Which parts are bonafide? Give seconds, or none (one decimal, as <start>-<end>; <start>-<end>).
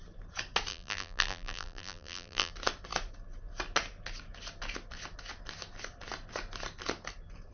0.0-0.7; 2.5-7.5